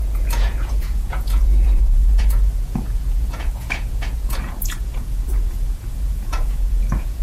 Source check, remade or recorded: remade